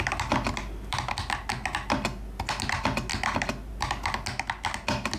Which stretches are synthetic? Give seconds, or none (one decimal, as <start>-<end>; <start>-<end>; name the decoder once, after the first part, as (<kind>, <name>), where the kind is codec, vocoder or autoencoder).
none